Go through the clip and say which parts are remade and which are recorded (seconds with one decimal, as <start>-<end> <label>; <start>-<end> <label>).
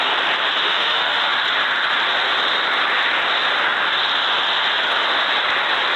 0.0-0.6 recorded; 0.6-1.3 remade; 1.3-6.0 recorded